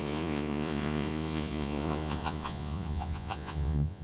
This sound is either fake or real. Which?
fake